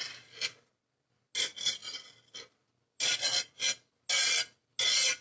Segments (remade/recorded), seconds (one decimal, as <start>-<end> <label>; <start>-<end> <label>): 0.0-5.2 recorded